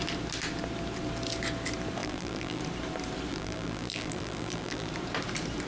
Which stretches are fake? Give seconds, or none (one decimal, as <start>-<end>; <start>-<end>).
2.0-2.6; 3.3-4.9